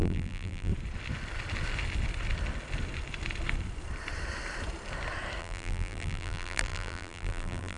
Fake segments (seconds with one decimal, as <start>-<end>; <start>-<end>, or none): 0.0-0.7; 5.4-7.8